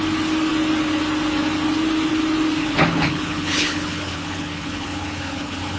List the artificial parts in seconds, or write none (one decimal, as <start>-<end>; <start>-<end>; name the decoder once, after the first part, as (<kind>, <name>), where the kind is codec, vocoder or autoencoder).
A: 2.6-5.8 (codec, HILCodec)